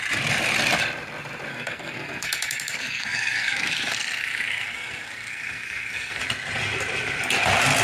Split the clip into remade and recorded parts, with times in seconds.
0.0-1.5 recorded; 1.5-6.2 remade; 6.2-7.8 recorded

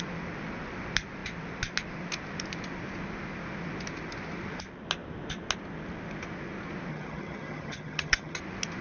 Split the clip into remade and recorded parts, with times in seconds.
0.0-6.9 recorded; 6.9-8.4 remade; 8.4-8.8 recorded

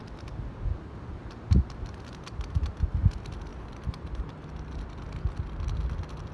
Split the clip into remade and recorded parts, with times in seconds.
0.0-3.5 recorded; 3.5-4.5 remade; 4.5-6.3 recorded

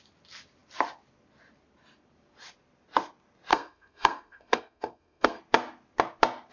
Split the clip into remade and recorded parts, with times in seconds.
0.0-3.5 recorded; 3.5-5.4 remade; 5.4-6.5 recorded